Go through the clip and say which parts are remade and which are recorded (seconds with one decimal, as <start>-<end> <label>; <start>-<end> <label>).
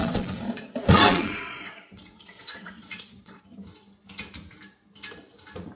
0.0-3.4 remade; 3.4-5.8 recorded